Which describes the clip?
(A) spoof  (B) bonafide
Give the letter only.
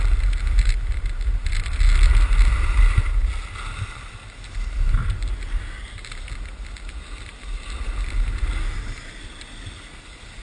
B